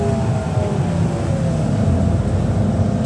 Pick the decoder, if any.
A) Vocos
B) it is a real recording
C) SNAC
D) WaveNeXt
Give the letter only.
B